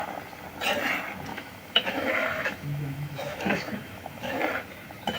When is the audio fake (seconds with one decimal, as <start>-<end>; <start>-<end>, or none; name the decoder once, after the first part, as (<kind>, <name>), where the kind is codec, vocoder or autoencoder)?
1.3-4.4 (autoencoder, DAC-VAE)